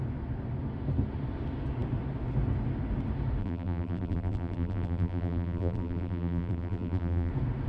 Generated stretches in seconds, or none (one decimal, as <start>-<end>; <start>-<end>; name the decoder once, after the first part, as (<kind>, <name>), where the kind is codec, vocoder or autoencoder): 3.4-7.3 (vocoder, BigVGAN v2)